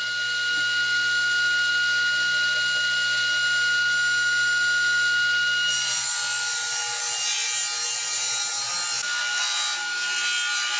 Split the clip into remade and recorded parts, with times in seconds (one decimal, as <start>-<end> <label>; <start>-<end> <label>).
0.0-10.8 recorded